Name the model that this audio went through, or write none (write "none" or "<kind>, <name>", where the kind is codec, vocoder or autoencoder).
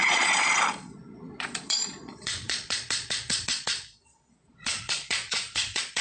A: vocoder, Vocos